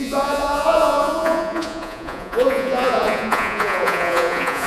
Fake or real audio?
fake